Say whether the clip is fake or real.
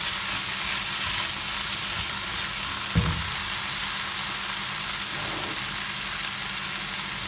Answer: real